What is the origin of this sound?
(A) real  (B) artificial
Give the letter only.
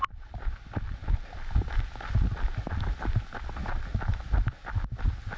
A